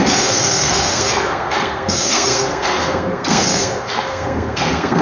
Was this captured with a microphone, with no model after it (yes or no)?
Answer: no